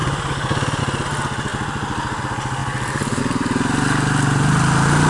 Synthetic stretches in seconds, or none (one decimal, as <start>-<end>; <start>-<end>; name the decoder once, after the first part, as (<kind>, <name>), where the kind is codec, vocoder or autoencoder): none